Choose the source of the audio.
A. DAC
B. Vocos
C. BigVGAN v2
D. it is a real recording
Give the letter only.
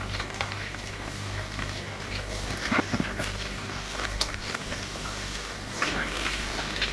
A